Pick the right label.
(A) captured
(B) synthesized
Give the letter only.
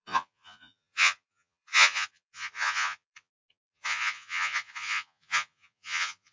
B